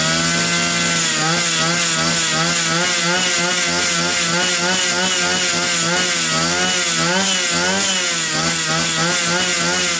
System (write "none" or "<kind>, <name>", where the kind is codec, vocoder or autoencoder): none